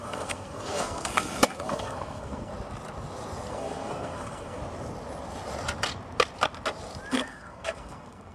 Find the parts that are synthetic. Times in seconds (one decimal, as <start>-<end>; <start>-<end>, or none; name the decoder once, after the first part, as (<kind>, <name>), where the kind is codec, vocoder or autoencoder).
0.0-2.5 (codec, SNAC); 3.5-4.6; 7.1-8.3